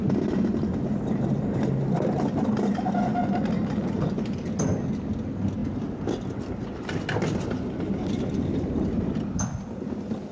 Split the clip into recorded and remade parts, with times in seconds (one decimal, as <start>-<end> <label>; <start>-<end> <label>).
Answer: 0.0-10.3 recorded